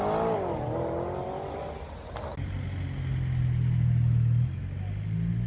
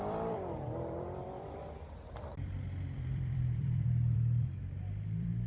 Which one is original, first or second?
first